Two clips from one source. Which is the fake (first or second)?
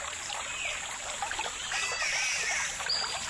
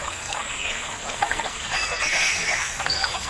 second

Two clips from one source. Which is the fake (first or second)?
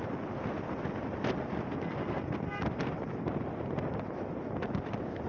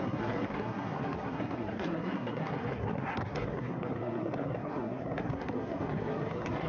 second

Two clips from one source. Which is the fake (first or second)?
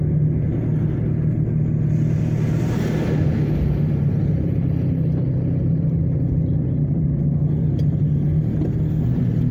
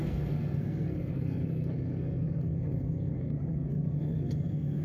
second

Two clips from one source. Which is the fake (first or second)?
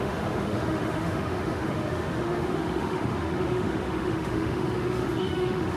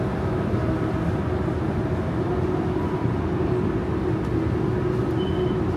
first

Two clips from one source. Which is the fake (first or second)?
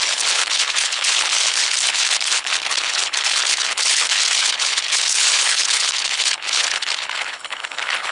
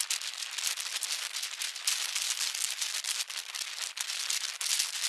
first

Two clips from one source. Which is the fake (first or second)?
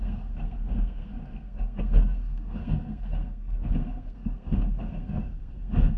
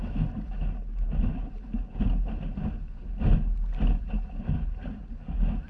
first